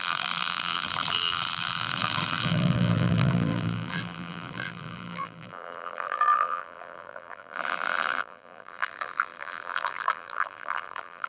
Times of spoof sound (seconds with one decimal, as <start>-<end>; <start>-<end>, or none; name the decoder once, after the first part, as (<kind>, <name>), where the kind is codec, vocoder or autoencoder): 0.0-11.3 (vocoder, BigVGAN v2)